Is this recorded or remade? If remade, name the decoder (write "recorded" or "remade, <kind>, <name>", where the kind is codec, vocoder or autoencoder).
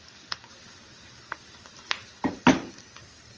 recorded